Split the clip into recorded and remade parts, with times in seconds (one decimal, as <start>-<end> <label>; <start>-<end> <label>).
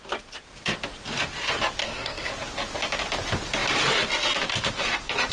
0.0-1.8 recorded; 1.8-2.3 remade; 2.3-5.3 recorded